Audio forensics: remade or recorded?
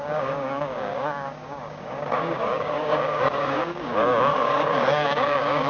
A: remade